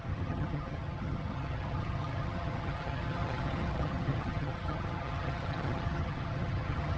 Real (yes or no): no